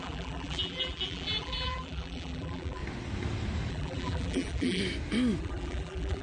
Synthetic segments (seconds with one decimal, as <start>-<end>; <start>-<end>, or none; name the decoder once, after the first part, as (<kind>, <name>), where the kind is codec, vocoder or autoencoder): 0.0-2.8 (vocoder, BigVGAN v2); 3.7-4.8; 5.4-6.2